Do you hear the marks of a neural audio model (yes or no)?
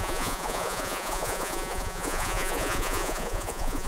yes